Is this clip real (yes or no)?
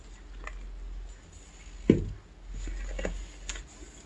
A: yes